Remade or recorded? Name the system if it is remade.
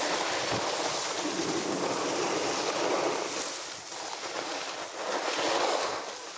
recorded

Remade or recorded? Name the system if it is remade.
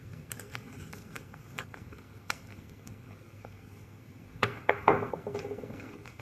remade, codec, SNAC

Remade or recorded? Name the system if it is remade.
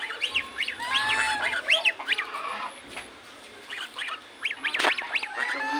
recorded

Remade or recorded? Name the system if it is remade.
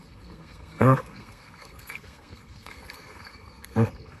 remade, codec, SNAC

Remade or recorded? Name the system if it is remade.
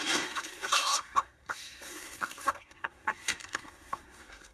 remade, codec, SNAC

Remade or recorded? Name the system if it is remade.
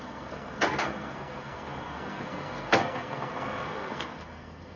remade, codec, SNAC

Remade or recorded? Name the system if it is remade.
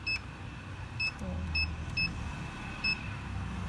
recorded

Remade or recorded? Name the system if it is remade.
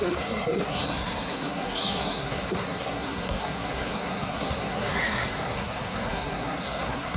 remade, codec, SNAC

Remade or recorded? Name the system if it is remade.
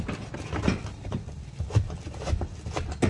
recorded